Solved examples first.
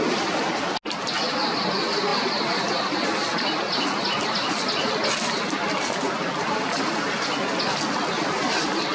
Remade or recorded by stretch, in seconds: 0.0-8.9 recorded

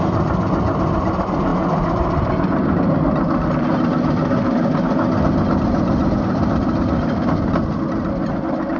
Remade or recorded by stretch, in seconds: 0.0-8.8 recorded